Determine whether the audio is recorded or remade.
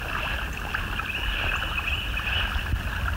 recorded